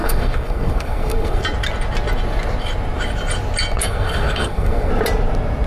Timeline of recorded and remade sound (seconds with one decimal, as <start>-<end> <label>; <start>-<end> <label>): 0.0-1.4 remade; 1.4-3.8 recorded; 3.8-4.9 remade; 4.9-5.7 recorded